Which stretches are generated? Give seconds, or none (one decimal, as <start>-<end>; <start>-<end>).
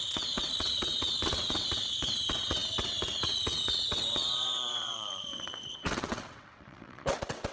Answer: 0.0-7.5